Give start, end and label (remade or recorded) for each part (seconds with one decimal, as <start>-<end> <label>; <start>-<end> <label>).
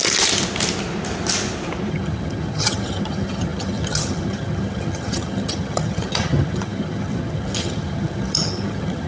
0.0-1.9 recorded; 1.9-9.1 remade